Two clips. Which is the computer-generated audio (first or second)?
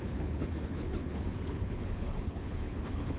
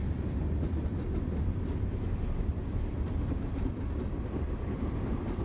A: first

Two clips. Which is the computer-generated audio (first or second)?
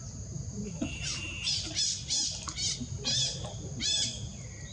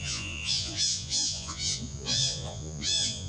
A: second